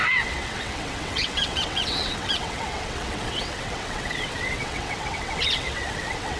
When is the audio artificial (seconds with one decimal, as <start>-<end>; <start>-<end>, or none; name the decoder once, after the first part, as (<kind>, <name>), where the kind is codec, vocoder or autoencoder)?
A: 0.0-6.4 (vocoder, WaveNeXt)